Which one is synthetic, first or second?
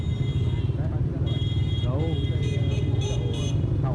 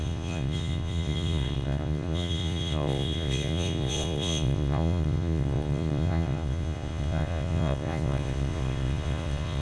second